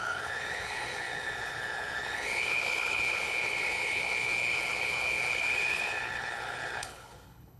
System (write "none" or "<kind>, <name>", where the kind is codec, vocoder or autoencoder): codec, HILCodec